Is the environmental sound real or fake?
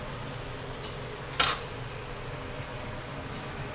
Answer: real